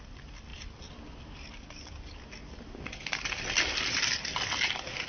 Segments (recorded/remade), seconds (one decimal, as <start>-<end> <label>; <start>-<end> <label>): 0.0-5.1 recorded